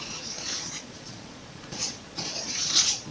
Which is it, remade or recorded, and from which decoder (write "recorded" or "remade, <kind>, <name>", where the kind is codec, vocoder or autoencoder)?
remade, vocoder, Vocos